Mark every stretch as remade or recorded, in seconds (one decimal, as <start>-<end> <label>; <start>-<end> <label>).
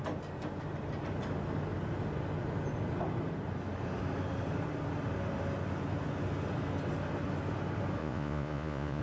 0.0-8.0 recorded; 8.0-9.0 remade